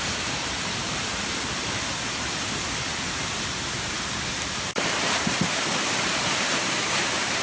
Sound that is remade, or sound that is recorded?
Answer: remade